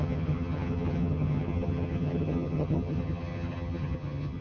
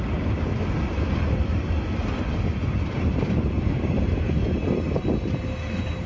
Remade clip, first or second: first